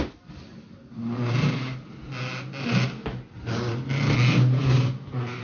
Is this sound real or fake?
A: real